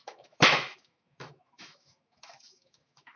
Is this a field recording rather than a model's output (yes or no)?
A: no